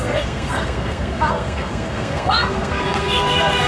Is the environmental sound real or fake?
fake